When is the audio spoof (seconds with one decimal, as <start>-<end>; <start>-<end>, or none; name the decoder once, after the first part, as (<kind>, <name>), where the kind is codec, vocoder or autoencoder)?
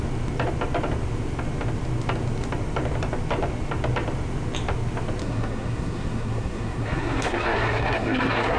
5.2-8.6 (codec, SNAC)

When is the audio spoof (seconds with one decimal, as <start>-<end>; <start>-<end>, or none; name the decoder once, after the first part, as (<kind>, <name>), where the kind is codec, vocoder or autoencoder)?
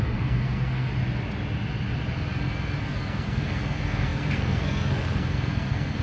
0.0-0.9 (codec, SNAC); 2.8-6.0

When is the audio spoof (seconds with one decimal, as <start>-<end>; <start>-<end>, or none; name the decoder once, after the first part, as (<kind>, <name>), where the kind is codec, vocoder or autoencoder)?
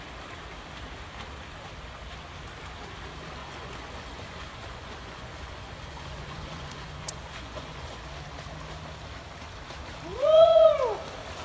3.4-8.0 (vocoder, Vocos); 10.1-10.7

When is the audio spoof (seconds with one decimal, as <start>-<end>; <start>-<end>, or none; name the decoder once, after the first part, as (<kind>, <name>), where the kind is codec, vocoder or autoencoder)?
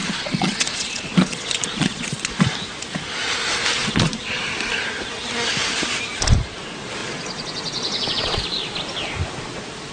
0.0-2.3 (vocoder, Vocos); 3.8-4.5; 7.0-8.4